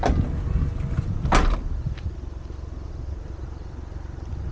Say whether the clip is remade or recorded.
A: recorded